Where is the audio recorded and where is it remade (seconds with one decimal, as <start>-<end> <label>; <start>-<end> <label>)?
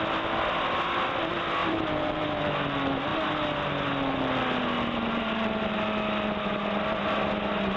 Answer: 0.0-1.6 recorded; 1.6-2.4 remade; 2.4-7.8 recorded